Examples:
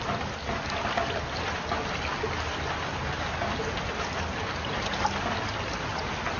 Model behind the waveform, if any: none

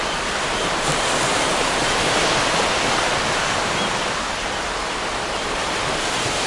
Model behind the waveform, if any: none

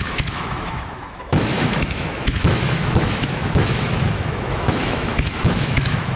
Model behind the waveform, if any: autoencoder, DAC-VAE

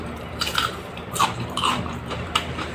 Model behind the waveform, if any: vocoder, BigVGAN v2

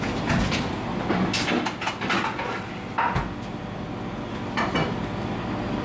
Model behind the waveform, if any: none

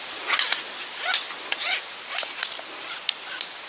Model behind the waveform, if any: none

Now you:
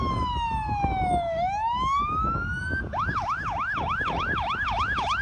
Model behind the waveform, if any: autoencoder, DAC-VAE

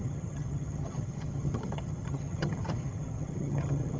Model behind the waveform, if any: vocoder, HiFi-GAN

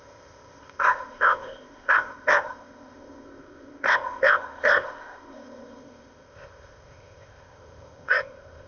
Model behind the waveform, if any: codec, ZipCodec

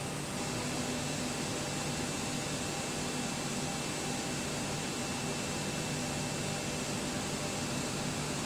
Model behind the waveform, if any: none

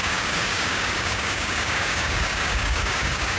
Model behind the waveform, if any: codec, DAC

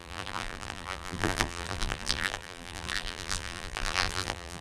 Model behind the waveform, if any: vocoder, BigVGAN v2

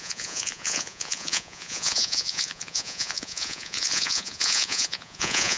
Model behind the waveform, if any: vocoder, Vocos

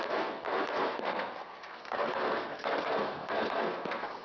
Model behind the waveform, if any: codec, SNAC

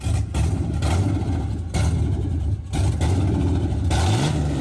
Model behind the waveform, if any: none